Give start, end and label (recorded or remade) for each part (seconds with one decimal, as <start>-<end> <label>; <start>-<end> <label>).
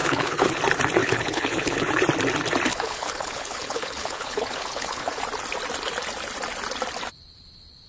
0.0-0.6 remade; 0.6-1.0 recorded; 1.0-1.9 remade; 1.9-2.7 recorded; 2.7-5.2 remade; 5.2-7.9 recorded